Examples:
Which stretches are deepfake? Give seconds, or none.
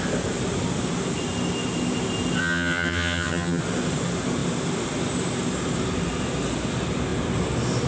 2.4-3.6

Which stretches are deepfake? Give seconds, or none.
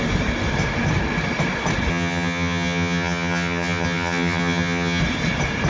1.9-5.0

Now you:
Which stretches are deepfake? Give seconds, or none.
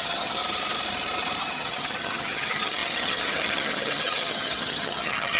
0.0-0.4; 1.4-5.4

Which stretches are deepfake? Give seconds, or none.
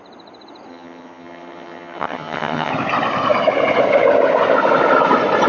0.7-2.7